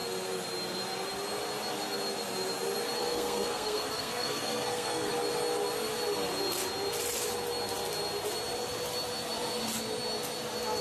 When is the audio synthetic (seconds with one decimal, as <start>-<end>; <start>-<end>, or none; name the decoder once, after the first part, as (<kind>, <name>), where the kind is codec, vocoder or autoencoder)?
3.0-5.1 (codec, SNAC)